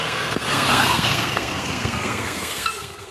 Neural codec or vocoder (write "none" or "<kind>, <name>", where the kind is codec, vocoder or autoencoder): codec, SNAC